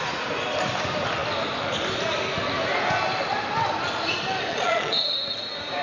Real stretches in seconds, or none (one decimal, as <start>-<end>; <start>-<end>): 0.0-4.5; 5.1-5.8